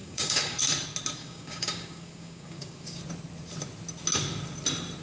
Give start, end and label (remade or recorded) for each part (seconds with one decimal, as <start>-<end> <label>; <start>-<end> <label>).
0.0-0.6 remade; 0.6-1.2 recorded; 1.2-3.0 remade; 3.0-5.0 recorded